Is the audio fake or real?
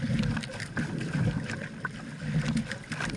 real